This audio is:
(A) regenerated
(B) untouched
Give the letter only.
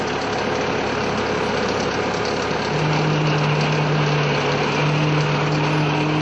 B